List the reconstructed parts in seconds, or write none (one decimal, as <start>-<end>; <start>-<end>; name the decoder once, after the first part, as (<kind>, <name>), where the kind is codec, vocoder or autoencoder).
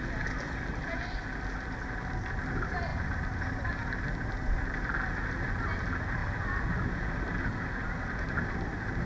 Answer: none